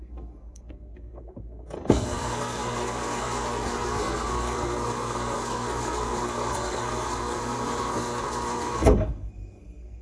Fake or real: fake